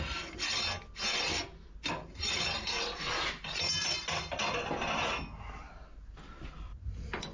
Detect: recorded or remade recorded